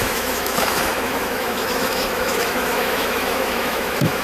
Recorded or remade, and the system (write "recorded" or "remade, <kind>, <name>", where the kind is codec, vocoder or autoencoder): remade, autoencoder, DAC-VAE